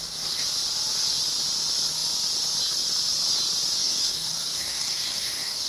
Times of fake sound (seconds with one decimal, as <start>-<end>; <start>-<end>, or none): 3.8-5.7

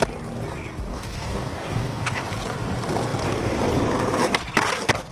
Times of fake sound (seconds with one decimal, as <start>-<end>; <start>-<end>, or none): 0.9-2.2

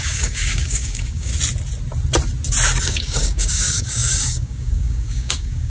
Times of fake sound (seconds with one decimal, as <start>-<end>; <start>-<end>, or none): 0.0-1.3; 2.8-5.7

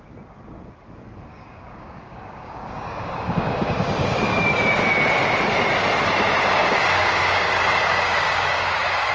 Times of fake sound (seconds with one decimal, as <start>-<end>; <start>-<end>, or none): 1.3-4.7; 6.6-9.1